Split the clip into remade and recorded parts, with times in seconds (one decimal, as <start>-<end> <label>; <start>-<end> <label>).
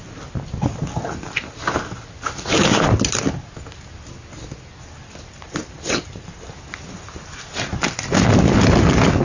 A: 0.0-9.2 recorded